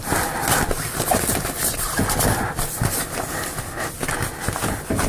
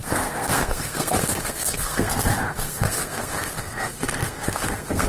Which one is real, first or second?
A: first